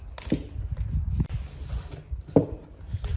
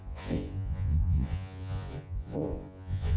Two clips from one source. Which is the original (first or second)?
first